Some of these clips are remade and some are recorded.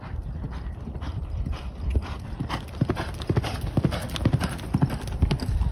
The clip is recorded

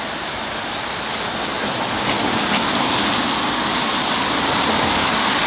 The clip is recorded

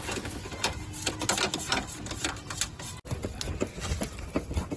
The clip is recorded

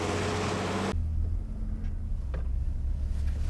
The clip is recorded